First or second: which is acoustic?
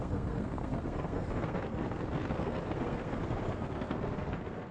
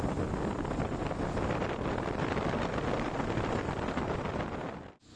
second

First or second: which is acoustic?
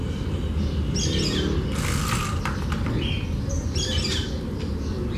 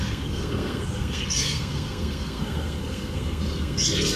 first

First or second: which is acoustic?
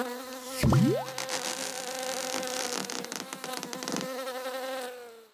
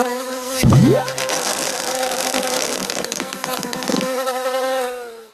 first